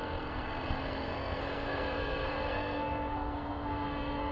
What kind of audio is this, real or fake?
fake